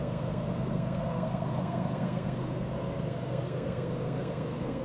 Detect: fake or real fake